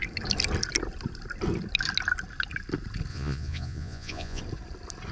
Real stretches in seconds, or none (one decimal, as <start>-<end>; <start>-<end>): 0.0-3.1; 4.4-5.1